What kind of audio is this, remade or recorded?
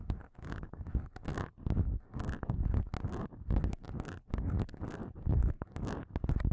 recorded